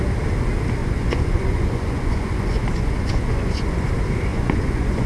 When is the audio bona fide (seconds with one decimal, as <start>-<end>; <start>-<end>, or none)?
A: 0.0-0.8; 3.9-4.3